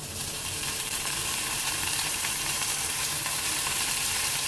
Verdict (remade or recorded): remade